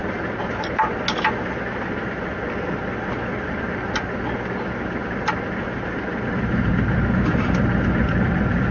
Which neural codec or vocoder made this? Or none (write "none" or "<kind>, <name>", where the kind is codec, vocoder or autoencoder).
none